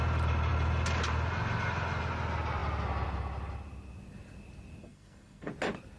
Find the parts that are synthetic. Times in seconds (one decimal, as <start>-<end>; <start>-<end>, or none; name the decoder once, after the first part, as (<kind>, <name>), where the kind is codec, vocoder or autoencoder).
4.8-5.5 (codec, SNAC)